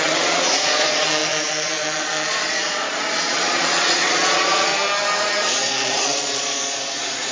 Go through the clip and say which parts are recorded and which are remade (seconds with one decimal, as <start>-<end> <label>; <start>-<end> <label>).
0.0-4.7 remade; 4.7-5.2 recorded; 5.2-7.3 remade